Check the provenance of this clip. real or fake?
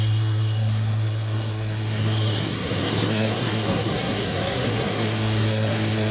fake